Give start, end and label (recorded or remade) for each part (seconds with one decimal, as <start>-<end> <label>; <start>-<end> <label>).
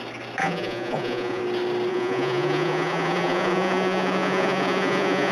0.0-0.4 recorded; 0.4-1.4 remade; 1.4-1.9 recorded; 1.9-5.3 remade